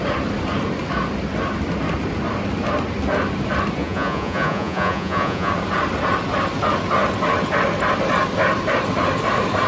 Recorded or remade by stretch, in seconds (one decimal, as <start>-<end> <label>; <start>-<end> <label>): 0.0-3.8 recorded; 3.8-5.5 remade; 5.5-9.7 recorded